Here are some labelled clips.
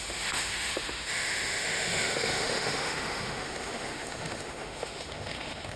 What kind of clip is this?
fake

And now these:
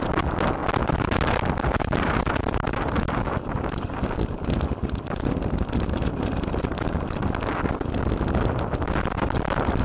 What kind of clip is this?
real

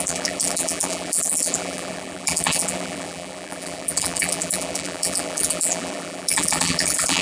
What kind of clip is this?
fake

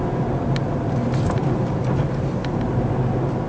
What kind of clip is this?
real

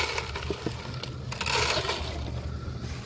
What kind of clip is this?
real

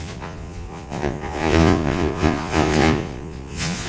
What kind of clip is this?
fake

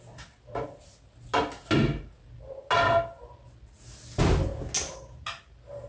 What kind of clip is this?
real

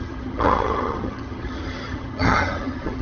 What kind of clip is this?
fake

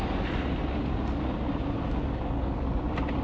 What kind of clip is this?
real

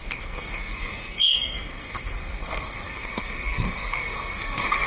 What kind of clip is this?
fake